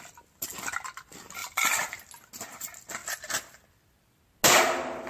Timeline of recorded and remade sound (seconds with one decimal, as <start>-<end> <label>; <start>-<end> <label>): 0.0-1.4 recorded; 1.4-2.1 remade; 2.1-3.0 recorded; 3.0-4.2 remade; 4.2-5.1 recorded